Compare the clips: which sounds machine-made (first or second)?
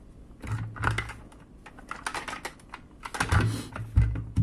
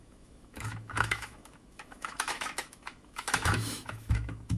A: second